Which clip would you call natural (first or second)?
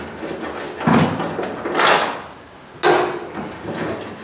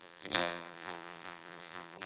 first